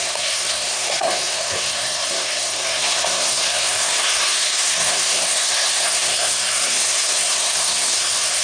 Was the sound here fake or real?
fake